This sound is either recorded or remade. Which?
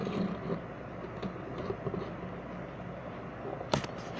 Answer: recorded